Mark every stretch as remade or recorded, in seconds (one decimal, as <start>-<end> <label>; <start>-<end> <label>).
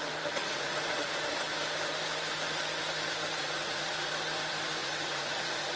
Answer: 0.0-0.4 recorded; 0.4-1.1 remade; 1.1-3.4 recorded; 3.4-4.1 remade; 4.1-4.8 recorded; 4.8-5.8 remade